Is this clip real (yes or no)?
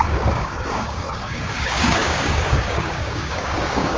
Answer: no